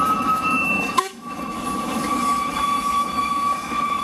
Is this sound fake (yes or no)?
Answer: yes